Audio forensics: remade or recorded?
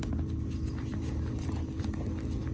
recorded